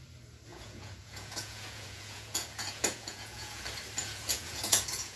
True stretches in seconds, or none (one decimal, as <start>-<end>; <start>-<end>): 0.0-0.5; 3.6-4.0